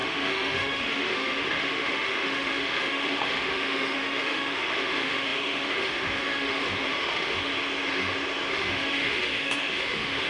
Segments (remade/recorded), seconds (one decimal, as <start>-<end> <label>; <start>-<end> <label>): 0.0-7.5 remade; 7.5-8.5 recorded; 8.5-10.3 remade